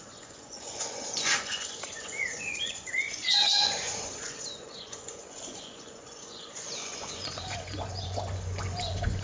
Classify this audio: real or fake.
fake